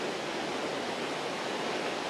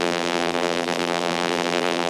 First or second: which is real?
first